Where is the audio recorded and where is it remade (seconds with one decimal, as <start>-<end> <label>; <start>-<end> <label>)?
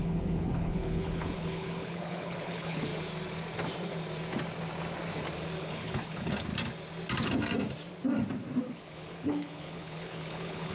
0.0-2.9 remade; 2.9-5.6 recorded; 5.6-6.5 remade; 6.5-8.6 recorded; 8.6-10.7 remade